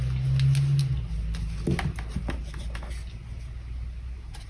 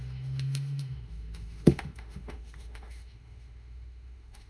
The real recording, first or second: first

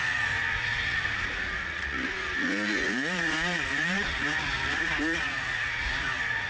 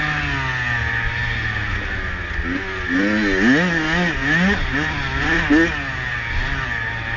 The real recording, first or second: second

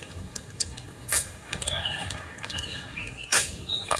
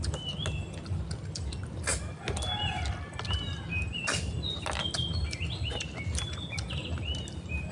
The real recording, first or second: second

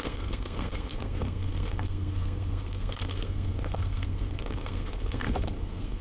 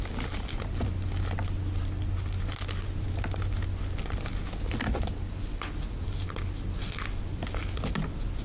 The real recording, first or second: second